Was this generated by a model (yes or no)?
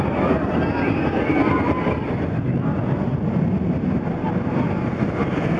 no